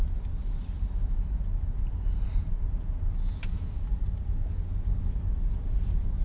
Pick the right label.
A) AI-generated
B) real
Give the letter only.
B